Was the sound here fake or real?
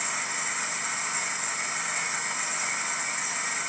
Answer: real